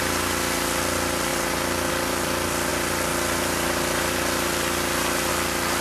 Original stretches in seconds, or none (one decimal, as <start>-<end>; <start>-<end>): 0.0-5.8